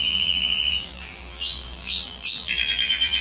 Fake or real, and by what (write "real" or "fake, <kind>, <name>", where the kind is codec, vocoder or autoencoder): fake, vocoder, BigVGAN v2